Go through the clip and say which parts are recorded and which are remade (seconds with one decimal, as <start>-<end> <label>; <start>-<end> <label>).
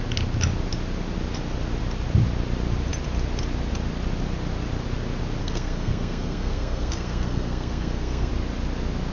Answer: 0.0-5.4 recorded; 5.4-8.3 remade; 8.3-9.1 recorded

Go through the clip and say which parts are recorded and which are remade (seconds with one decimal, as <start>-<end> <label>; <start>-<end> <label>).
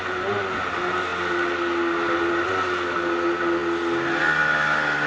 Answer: 0.0-5.1 recorded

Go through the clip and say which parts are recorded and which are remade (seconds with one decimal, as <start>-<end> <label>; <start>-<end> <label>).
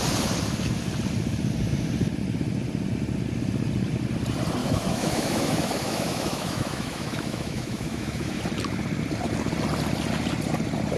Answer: 0.0-4.6 recorded; 4.6-8.4 remade; 8.4-11.0 recorded